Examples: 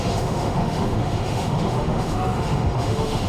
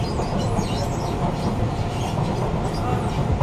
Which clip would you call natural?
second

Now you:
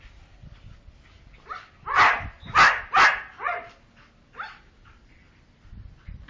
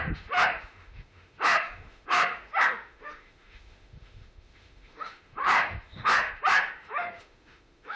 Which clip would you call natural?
first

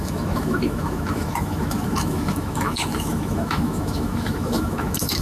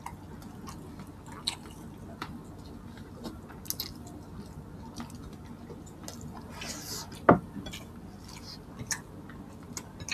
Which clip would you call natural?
second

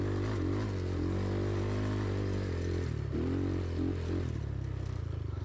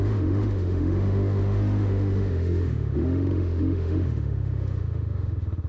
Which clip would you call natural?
first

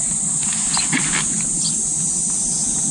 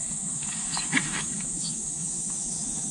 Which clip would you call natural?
first